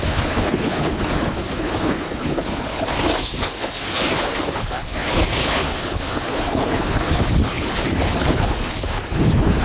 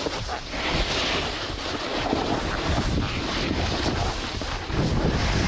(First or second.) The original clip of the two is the second